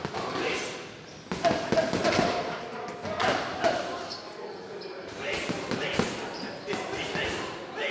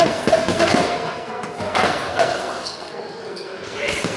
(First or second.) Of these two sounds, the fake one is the second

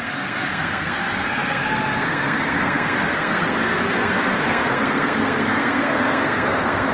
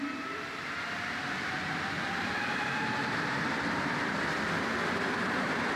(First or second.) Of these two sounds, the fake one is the first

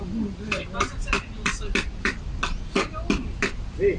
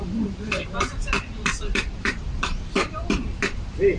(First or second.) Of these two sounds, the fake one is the second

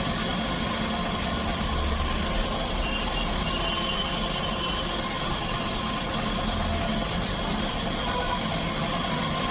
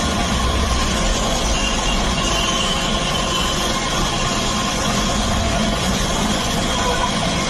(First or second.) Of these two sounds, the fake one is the second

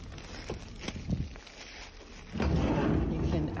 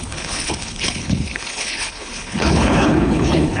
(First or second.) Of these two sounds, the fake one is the second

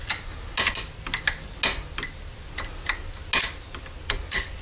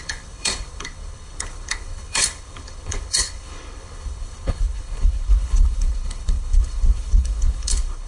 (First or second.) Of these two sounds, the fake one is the second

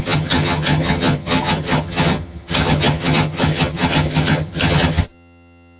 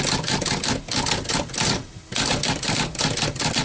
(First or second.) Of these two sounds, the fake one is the first